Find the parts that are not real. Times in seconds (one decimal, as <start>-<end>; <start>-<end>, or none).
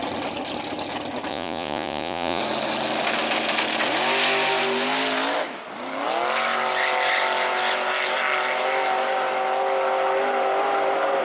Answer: 1.3-2.4